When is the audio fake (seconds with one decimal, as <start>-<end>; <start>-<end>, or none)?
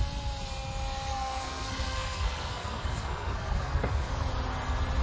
1.1-4.1